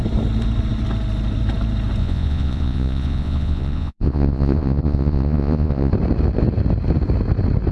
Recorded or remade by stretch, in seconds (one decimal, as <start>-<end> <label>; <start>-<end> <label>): 0.0-2.0 recorded; 2.0-5.9 remade; 5.9-7.7 recorded

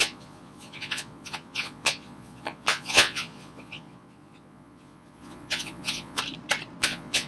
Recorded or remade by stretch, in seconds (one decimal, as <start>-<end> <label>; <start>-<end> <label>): 0.0-6.2 remade; 6.2-6.8 recorded; 6.8-7.3 remade

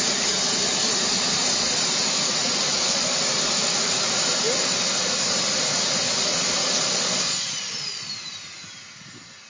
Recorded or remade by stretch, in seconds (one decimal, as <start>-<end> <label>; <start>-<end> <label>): 0.0-2.4 recorded; 2.4-3.0 remade; 3.0-6.3 recorded; 6.3-8.1 remade; 8.1-9.5 recorded

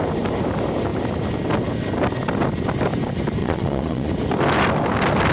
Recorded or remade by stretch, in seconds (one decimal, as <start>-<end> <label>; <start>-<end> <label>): 0.0-3.4 recorded; 3.4-4.1 remade; 4.1-5.3 recorded

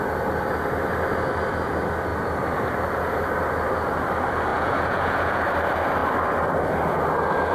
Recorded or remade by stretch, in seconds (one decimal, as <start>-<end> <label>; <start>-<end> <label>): 0.0-4.5 recorded; 4.5-5.4 remade; 5.4-7.5 recorded

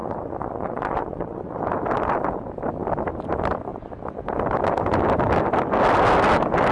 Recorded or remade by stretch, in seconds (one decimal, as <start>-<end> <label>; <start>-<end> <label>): 0.0-1.6 remade; 1.6-6.7 recorded